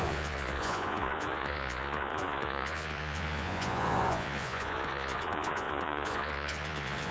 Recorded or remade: remade